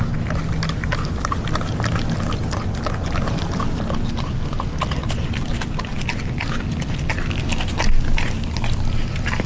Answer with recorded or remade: recorded